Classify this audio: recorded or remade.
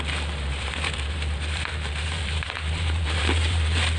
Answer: remade